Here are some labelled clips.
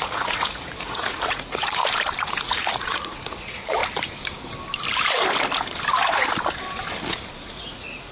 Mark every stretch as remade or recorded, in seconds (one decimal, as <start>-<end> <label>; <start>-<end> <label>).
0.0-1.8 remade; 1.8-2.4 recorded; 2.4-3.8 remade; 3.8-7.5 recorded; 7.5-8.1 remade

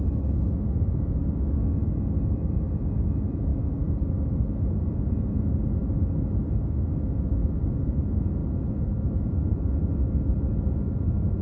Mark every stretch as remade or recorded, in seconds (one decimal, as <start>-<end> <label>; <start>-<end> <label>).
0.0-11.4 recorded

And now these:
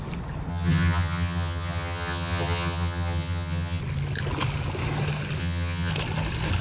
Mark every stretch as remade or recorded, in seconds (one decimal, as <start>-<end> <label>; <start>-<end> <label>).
0.0-0.5 recorded; 0.5-3.8 remade; 3.8-5.4 recorded; 5.4-5.9 remade; 5.9-6.6 recorded

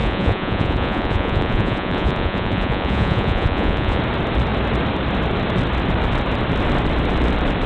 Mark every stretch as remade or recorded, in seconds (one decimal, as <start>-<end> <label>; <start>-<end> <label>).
0.0-4.0 remade; 4.0-7.7 recorded

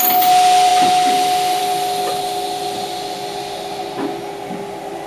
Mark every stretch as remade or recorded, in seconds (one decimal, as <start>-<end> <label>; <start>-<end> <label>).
0.0-5.1 recorded